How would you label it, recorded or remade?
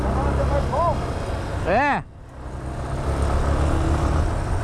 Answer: recorded